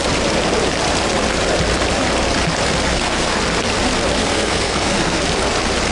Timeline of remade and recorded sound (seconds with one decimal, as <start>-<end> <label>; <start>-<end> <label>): 0.0-2.9 recorded; 2.9-3.4 remade; 3.4-4.2 recorded; 4.2-5.2 remade; 5.2-5.9 recorded